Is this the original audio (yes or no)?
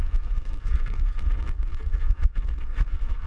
no